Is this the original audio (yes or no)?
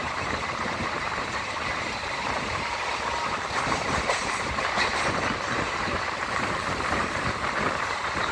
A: no